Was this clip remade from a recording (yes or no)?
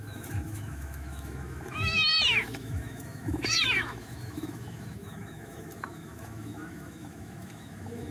yes